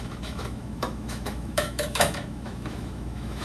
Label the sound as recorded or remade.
remade